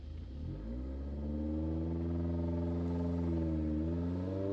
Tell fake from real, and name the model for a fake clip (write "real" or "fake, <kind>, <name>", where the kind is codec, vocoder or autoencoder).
real